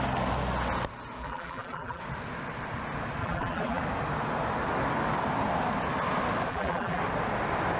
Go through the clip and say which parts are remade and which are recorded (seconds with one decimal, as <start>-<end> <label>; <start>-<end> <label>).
0.0-1.2 recorded; 1.2-2.0 remade; 2.0-3.2 recorded; 3.2-3.8 remade; 3.8-6.5 recorded; 6.5-7.0 remade; 7.0-7.8 recorded